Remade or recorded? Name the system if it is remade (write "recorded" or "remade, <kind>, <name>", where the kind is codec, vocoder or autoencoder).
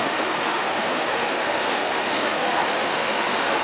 remade, autoencoder, DAC-VAE